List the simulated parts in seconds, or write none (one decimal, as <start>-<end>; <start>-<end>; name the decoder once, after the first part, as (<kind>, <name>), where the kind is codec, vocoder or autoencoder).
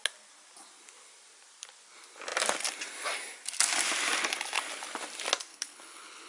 5.5-6.3 (codec, HILCodec)